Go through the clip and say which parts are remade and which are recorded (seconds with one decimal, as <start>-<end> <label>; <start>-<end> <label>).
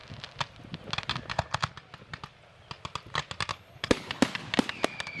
0.0-3.5 recorded; 3.5-4.2 remade; 4.2-5.2 recorded